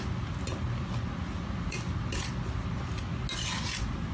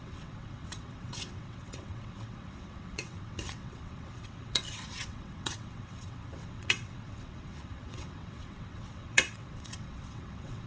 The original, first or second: first